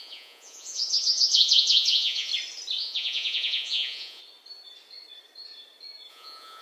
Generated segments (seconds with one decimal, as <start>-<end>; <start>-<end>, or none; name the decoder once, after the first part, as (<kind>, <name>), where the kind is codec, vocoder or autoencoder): 0.0-2.3 (vocoder, Vocos); 2.8-4.2; 6.1-6.6